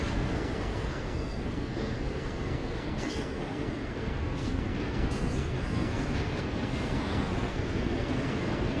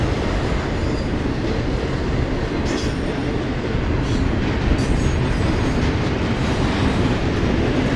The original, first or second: second